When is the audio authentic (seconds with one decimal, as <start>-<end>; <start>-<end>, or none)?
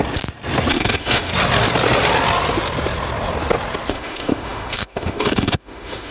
0.0-0.7; 1.3-3.9